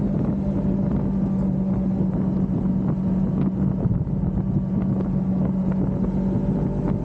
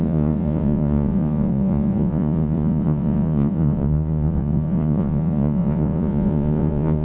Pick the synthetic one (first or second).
second